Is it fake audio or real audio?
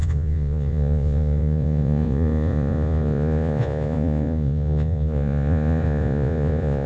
fake